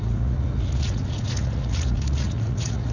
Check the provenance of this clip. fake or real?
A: fake